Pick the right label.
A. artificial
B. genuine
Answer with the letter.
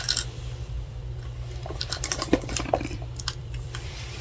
A